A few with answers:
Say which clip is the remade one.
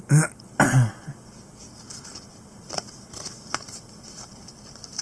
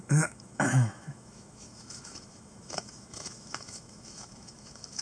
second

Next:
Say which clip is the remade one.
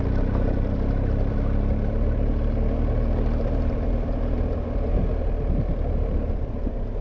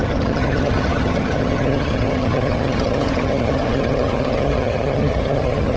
second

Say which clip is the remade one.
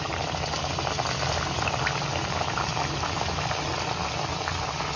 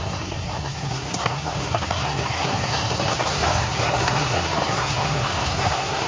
second